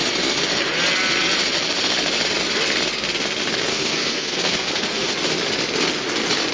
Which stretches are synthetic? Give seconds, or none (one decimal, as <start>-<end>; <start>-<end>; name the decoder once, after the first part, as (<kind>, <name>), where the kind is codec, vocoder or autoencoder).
3.7-5.1 (codec, SNAC)